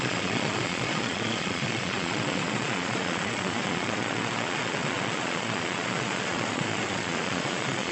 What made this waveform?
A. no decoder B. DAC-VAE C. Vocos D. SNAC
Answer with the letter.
C